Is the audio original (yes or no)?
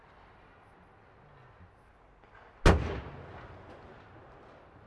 yes